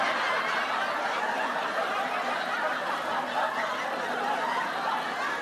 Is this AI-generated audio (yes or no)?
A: no